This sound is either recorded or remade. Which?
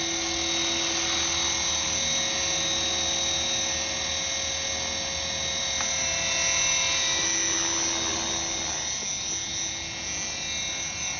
recorded